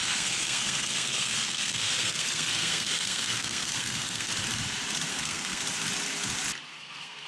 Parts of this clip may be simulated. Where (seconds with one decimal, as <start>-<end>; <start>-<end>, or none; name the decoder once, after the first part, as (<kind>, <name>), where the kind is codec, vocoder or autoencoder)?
0.0-4.3 (codec, SNAC); 5.1-5.6; 6.7-7.3